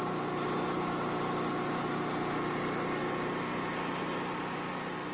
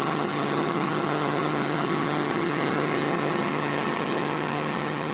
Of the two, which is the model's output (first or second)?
second